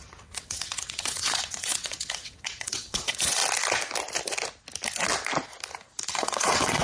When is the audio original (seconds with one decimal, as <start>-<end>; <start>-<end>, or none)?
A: 3.4-6.1